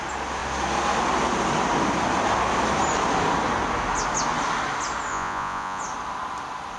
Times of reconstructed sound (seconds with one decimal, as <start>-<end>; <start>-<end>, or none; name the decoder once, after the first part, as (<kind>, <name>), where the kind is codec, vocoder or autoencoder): 5.1-5.8 (vocoder, Vocos)